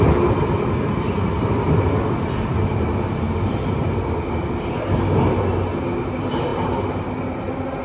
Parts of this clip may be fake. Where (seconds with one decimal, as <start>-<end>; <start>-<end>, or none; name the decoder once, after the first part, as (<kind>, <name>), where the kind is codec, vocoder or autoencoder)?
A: none